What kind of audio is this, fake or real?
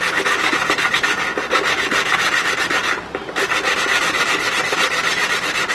real